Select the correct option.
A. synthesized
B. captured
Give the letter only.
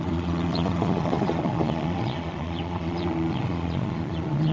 A